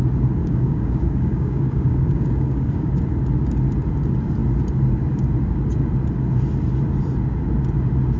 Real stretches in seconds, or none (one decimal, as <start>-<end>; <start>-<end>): 0.0-0.4; 3.0-8.2